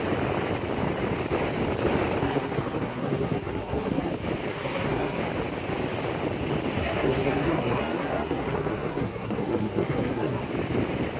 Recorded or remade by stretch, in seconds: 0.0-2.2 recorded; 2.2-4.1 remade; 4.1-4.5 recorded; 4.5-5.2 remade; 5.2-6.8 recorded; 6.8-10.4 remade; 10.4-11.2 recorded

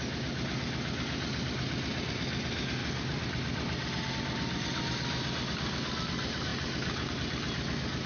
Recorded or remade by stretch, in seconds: 0.0-8.1 recorded

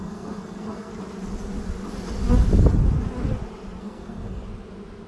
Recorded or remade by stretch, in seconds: 0.0-0.9 remade; 0.9-3.8 recorded; 3.8-4.4 remade; 4.4-5.1 recorded

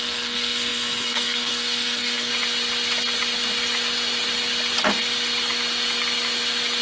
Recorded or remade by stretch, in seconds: 0.0-2.3 remade; 2.3-6.8 recorded

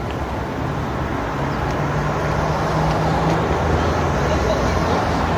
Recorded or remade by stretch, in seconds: 0.0-5.4 recorded

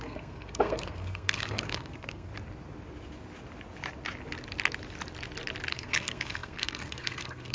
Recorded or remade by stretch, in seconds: 0.0-2.3 remade; 2.3-5.7 recorded; 5.7-7.5 remade

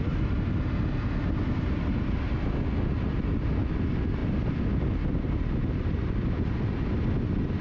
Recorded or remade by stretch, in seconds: 0.0-7.6 recorded